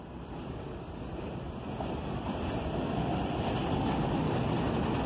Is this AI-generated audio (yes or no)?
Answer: no